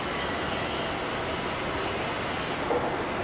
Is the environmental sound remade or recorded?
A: recorded